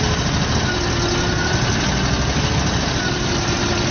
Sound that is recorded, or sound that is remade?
recorded